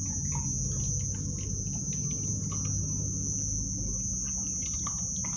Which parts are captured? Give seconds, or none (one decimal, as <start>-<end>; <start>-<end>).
0.0-5.4